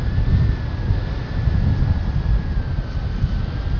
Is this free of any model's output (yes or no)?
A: yes